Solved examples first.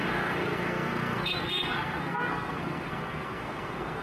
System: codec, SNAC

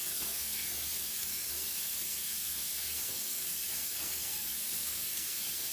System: codec, SNAC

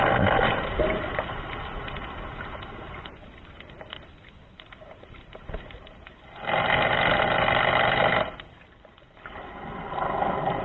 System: none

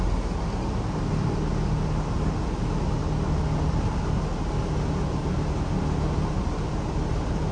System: none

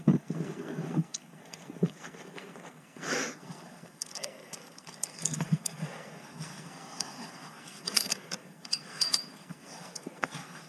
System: codec, SNAC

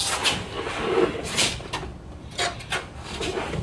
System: none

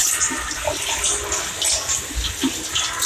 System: none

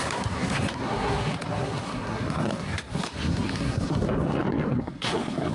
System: codec, SNAC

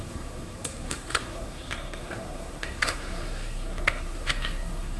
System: codec, SNAC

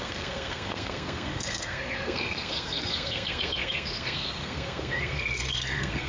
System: codec, SNAC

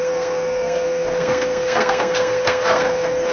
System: codec, SNAC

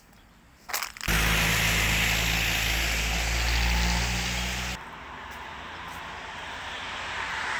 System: none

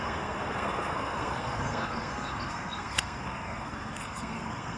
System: codec, SNAC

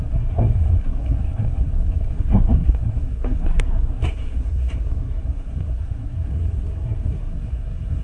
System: codec, SNAC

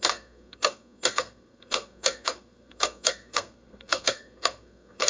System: codec, SNAC